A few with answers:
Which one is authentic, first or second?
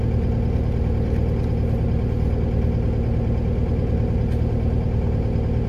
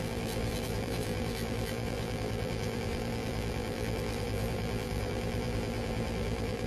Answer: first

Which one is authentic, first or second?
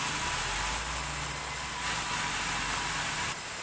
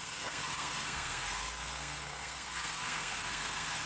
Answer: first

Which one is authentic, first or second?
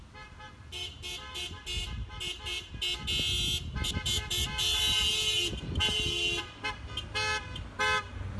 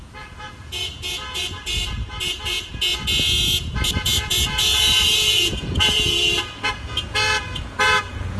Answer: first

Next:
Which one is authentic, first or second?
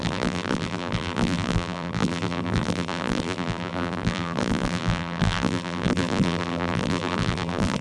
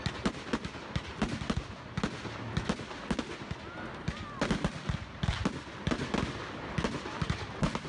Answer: second